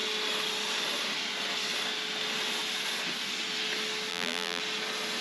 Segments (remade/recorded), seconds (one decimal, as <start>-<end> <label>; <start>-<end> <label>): 0.0-4.1 recorded; 4.1-4.6 remade; 4.6-5.2 recorded